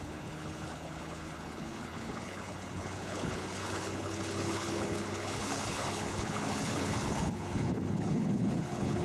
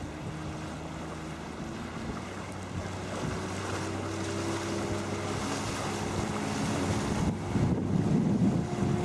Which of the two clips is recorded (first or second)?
second